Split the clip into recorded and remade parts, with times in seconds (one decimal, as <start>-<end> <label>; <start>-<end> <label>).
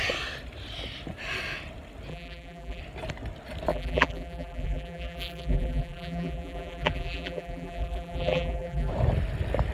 0.0-2.1 recorded; 2.1-2.8 remade; 2.8-3.7 recorded; 3.7-8.9 remade; 8.9-9.7 recorded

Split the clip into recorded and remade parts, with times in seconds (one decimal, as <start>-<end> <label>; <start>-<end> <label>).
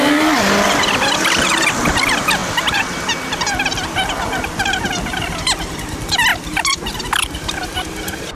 0.0-8.3 recorded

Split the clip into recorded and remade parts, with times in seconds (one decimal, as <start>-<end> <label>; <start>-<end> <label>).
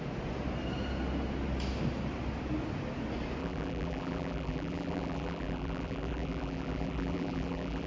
0.0-3.4 recorded; 3.4-7.9 remade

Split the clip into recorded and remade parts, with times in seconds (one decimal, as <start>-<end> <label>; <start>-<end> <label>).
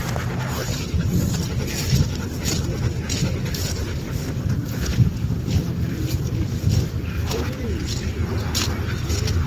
0.0-1.0 remade; 1.0-9.5 recorded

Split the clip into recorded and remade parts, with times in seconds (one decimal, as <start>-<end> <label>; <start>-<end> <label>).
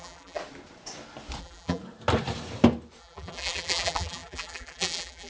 0.0-0.4 remade; 0.4-1.4 recorded; 1.4-1.8 remade; 1.8-3.0 recorded; 3.0-5.3 remade